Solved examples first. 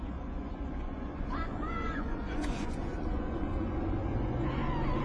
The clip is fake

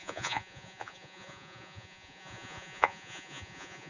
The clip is fake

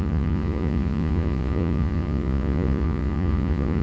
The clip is fake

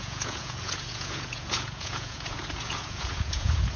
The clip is fake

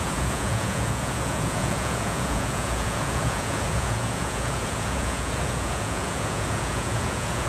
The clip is fake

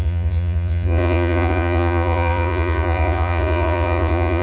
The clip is fake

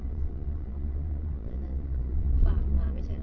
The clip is fake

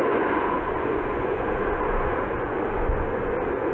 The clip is fake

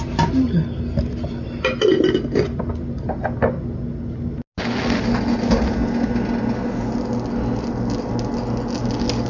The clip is real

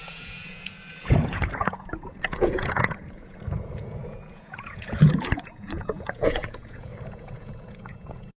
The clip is fake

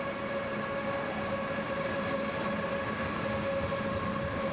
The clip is real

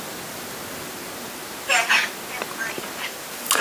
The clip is real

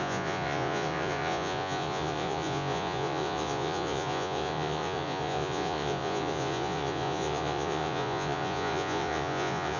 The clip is fake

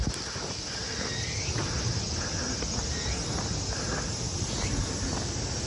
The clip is real